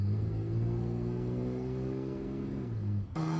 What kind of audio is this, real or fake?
fake